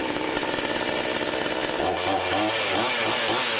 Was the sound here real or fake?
fake